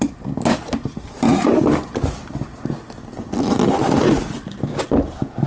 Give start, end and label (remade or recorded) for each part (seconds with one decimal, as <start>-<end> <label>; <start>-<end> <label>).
0.0-5.5 recorded